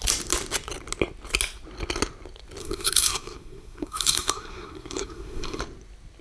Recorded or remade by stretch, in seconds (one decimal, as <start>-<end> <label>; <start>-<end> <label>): 0.0-2.6 recorded; 2.6-5.6 remade; 5.6-6.2 recorded